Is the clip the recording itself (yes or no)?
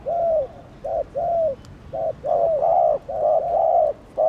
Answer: yes